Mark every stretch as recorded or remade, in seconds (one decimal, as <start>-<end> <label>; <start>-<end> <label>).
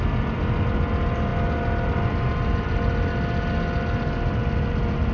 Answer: 0.0-5.1 recorded